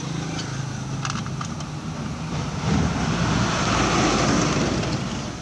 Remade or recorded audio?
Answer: recorded